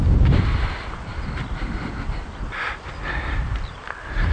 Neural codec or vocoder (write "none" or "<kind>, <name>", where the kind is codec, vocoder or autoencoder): vocoder, BigVGAN v2